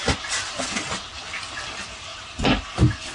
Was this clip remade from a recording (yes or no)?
no